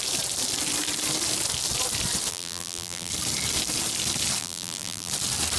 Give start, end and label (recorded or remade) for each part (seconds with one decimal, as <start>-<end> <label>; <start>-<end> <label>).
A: 0.0-2.3 recorded; 2.3-3.1 remade; 3.1-4.4 recorded; 4.4-5.1 remade; 5.1-5.6 recorded